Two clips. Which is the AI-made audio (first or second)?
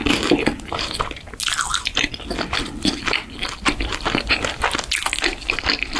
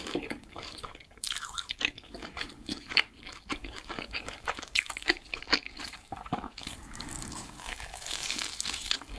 second